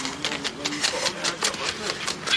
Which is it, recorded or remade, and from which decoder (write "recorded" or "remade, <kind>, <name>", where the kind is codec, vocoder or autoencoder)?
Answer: recorded